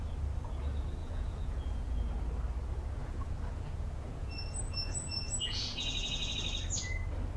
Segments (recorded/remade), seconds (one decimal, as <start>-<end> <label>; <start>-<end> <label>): 0.0-1.0 recorded; 1.0-2.0 remade; 2.0-3.0 recorded; 3.0-6.3 remade; 6.3-7.4 recorded